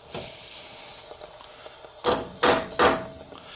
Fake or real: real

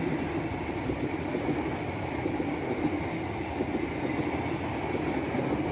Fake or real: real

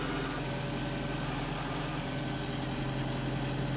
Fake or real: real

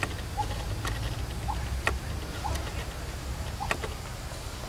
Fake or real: real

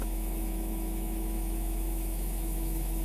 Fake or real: fake